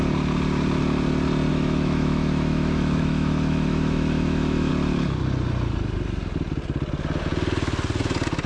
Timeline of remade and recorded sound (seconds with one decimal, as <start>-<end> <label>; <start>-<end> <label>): 0.0-1.5 recorded; 1.5-4.7 remade; 4.7-8.5 recorded